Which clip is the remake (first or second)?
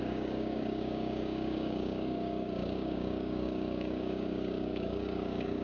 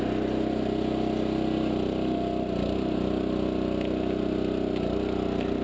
first